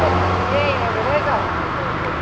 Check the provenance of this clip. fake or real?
real